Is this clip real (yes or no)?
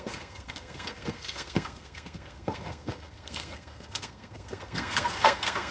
no